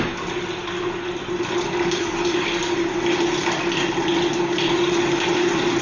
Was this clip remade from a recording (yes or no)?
no